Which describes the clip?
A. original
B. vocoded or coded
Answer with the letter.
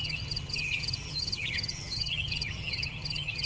B